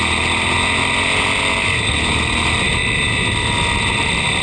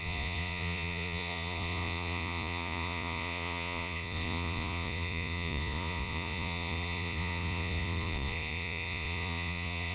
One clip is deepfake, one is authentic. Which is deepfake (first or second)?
second